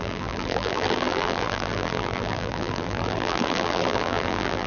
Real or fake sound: fake